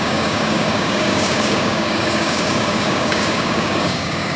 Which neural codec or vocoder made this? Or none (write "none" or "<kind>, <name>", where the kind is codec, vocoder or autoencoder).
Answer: codec, DAC